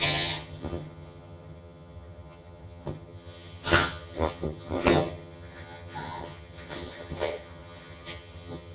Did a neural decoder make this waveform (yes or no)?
yes